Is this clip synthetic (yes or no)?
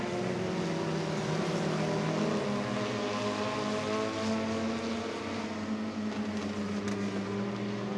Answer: no